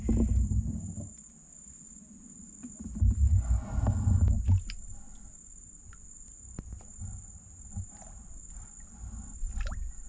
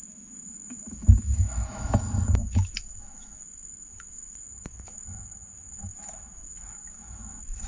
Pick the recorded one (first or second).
first